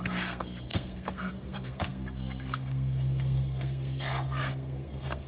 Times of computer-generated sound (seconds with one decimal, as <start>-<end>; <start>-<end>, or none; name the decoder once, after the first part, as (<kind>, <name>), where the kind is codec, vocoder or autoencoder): 0.0-5.3 (codec, SNAC)